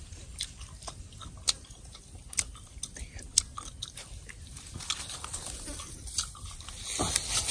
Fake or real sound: real